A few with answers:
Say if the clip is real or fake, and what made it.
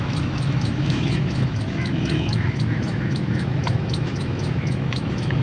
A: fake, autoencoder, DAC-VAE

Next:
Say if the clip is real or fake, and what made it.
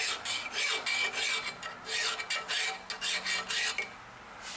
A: real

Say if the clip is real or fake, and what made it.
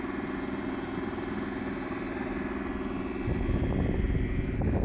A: real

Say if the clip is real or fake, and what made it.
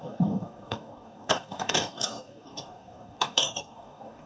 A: fake, codec, DAC